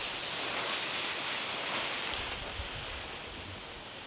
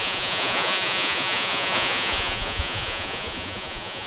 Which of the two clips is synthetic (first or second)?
second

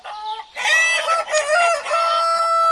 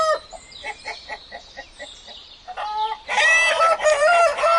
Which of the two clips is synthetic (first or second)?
second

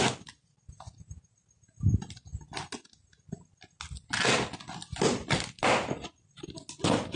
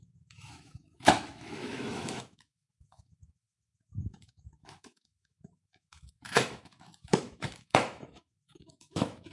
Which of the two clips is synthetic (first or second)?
second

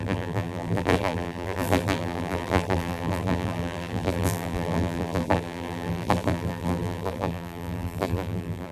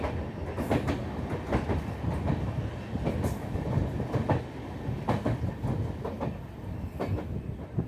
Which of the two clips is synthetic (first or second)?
first